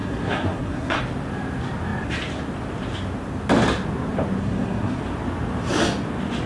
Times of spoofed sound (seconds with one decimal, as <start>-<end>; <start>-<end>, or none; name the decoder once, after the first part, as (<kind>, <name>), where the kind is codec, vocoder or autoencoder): 0.0-1.0 (codec, SNAC); 4.4-5.0

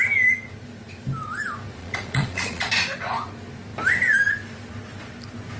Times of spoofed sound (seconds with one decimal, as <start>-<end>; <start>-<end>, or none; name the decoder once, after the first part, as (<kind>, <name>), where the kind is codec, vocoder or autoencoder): 1.8-2.7 (vocoder, Vocos)

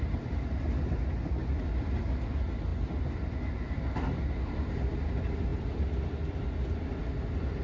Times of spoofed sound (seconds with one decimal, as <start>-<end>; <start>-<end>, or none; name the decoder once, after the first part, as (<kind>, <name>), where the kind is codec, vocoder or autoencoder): none

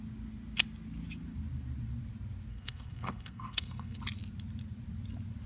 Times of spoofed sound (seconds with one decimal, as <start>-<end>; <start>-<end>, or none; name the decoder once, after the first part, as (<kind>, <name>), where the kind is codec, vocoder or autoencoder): 2.5-4.0 (codec, SNAC)

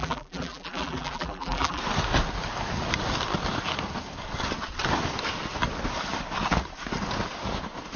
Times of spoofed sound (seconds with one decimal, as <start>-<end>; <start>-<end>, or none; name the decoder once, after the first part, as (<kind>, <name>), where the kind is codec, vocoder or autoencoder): 0.0-1.8 (vocoder, BigVGAN v2)

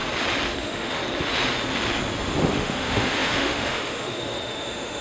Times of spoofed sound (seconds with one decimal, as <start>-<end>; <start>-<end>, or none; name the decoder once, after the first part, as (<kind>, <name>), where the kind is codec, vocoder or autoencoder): 0.6-1.0 (autoencoder, DAC-VAE); 2.5-5.0